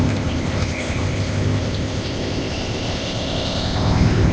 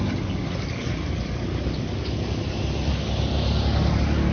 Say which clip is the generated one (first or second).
first